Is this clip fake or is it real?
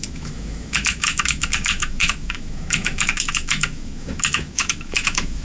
fake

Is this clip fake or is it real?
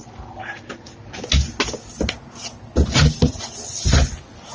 real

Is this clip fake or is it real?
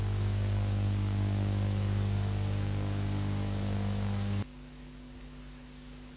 fake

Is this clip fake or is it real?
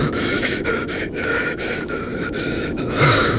fake